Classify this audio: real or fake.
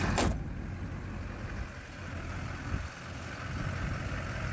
real